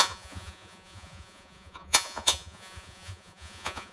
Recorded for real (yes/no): no